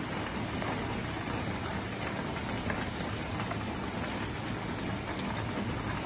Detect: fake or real real